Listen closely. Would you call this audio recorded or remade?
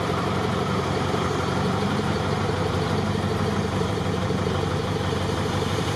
remade